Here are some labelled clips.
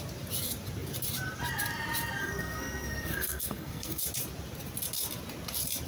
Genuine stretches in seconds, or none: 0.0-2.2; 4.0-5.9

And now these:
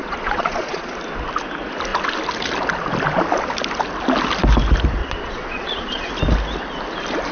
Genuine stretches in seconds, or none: 1.0-5.0; 6.1-7.3